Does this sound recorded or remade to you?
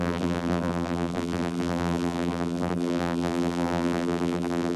remade